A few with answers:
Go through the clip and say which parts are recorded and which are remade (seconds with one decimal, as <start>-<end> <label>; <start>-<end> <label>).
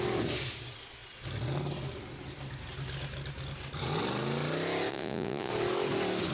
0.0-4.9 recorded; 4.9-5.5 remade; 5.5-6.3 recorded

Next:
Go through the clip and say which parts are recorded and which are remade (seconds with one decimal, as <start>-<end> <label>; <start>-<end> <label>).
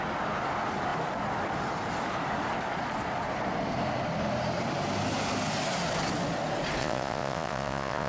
0.0-6.8 recorded; 6.8-8.1 remade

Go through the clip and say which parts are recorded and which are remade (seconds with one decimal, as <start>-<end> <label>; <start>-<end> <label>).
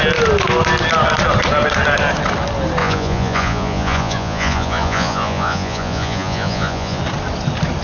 0.0-2.8 recorded; 2.8-7.0 remade; 7.0-7.8 recorded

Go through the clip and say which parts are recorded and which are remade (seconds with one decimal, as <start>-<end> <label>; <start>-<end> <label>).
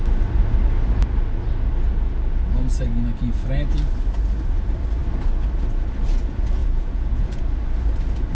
0.0-6.6 recorded; 6.6-7.4 remade; 7.4-8.3 recorded